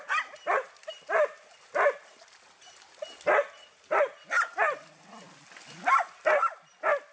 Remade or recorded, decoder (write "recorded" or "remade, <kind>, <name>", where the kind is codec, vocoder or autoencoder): recorded